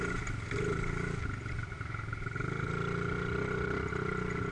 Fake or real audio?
real